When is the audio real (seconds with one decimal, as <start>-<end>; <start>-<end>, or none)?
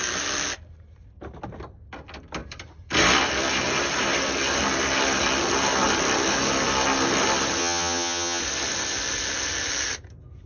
0.0-7.6; 8.4-10.5